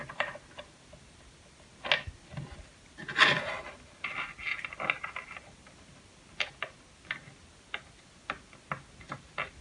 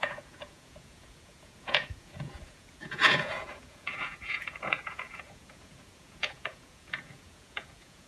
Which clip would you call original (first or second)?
first